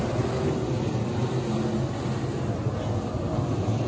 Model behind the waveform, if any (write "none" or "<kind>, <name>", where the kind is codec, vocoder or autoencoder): none